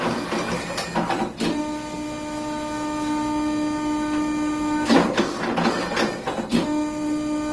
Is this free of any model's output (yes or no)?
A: yes